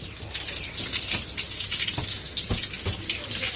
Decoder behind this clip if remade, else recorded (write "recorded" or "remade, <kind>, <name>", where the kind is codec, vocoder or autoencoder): recorded